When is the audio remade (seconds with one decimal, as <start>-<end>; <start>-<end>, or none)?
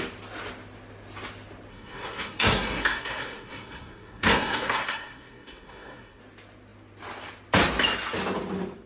1.7-6.2